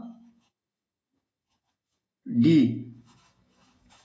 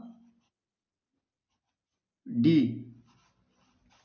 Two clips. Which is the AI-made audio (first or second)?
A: first